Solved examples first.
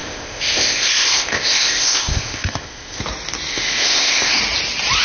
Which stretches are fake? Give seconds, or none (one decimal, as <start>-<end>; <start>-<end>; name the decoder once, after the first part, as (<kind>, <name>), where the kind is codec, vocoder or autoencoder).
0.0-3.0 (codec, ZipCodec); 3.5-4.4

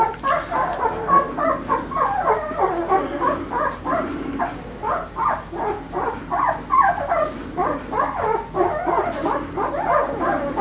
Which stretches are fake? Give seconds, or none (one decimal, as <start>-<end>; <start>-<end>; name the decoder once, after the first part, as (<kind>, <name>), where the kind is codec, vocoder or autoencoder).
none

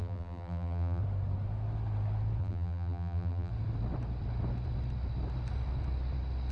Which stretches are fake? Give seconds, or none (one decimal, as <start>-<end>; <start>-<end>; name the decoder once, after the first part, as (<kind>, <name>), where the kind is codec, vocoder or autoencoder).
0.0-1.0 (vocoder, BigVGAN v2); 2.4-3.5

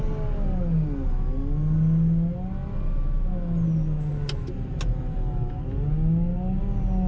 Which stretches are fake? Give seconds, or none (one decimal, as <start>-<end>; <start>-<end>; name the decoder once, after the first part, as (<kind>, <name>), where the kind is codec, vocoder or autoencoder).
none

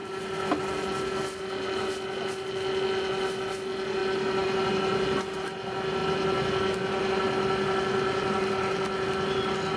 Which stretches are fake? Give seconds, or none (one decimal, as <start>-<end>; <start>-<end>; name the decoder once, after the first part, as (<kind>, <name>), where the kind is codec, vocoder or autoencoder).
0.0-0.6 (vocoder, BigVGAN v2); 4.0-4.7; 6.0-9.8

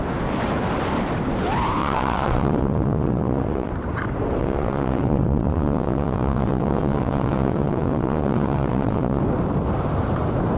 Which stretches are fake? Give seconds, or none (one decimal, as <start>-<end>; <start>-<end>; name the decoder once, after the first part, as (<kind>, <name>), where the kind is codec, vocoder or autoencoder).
1.8-3.7 (vocoder, WaveNeXt); 4.4-9.2